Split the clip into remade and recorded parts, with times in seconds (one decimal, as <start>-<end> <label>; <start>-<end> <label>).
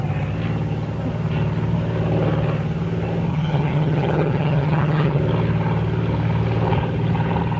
0.0-3.3 recorded; 3.3-5.2 remade; 5.2-7.6 recorded